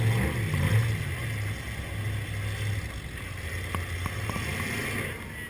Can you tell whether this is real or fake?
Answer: real